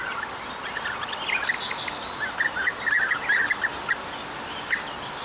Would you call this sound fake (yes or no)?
no